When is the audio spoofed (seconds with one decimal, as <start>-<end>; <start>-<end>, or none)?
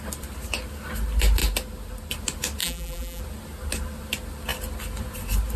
2.6-3.2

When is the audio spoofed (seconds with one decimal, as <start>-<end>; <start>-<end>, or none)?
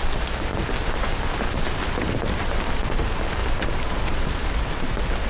0.5-3.0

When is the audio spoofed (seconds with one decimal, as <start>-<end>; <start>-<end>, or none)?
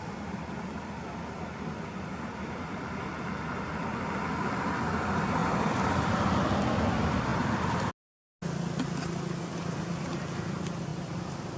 5.4-6.3; 7.3-7.9; 10.9-11.6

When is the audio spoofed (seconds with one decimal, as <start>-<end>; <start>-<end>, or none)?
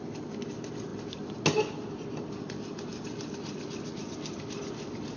none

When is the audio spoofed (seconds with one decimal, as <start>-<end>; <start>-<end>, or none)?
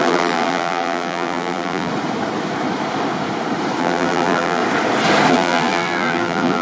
0.0-1.9; 3.8-4.6; 5.3-6.6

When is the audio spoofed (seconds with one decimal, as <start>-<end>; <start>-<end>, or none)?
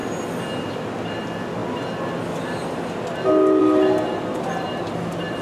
none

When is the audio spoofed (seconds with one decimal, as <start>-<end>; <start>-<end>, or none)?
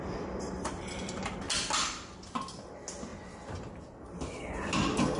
none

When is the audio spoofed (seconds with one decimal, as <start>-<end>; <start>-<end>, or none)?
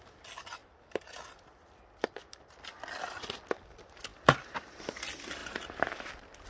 0.6-1.2; 4.1-4.8; 5.4-6.1